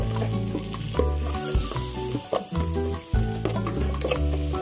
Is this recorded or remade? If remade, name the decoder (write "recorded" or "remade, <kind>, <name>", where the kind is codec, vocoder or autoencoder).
recorded